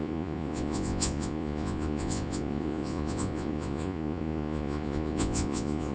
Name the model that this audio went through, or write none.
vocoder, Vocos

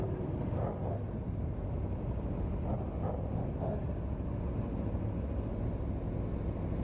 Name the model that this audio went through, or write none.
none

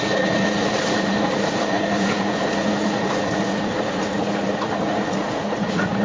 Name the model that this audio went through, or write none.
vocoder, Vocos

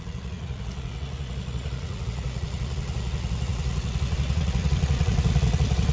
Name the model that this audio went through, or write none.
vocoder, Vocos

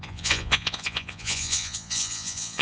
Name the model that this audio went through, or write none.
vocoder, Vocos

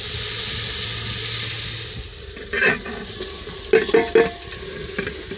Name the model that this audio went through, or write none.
none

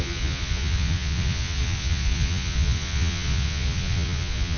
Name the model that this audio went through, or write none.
vocoder, Vocos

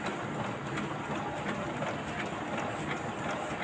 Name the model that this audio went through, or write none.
none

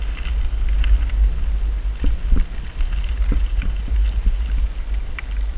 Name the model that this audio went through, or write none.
none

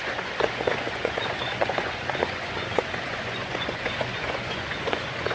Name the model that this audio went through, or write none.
vocoder, Vocos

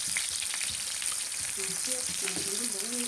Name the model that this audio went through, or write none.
none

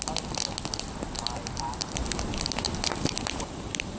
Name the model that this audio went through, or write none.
none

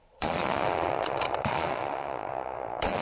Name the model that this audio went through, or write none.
vocoder, Vocos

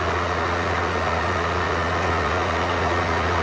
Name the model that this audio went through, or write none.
vocoder, Vocos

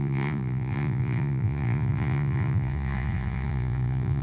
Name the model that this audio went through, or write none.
vocoder, Vocos